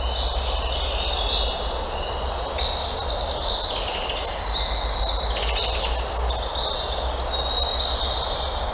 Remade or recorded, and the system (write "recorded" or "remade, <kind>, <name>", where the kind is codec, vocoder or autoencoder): recorded